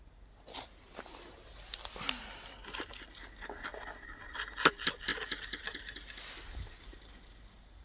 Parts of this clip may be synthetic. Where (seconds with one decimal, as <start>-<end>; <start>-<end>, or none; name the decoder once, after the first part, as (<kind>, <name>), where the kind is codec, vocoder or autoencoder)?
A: none